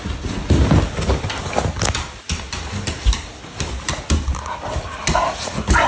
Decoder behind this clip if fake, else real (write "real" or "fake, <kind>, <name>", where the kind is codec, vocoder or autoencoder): real